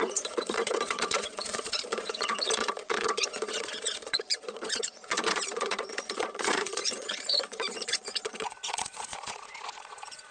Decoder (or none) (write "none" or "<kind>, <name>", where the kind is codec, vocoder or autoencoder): vocoder, Vocos